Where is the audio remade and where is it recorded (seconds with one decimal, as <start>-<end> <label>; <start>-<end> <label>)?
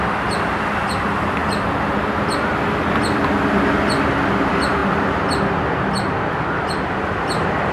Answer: 0.0-7.7 recorded